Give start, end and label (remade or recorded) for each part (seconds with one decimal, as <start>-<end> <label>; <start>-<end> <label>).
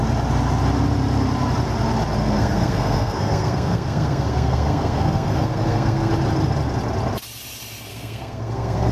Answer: 0.0-2.2 recorded; 2.2-6.1 remade; 6.1-7.9 recorded; 7.9-8.9 remade